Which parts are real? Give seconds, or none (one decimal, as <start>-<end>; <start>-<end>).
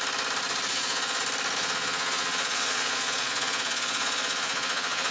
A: 0.0-0.7; 1.2-1.6